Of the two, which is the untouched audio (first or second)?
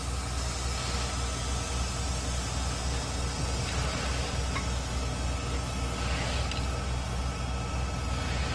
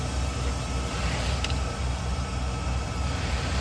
first